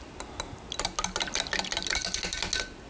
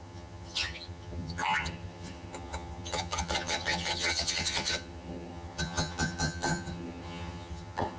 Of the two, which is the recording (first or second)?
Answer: first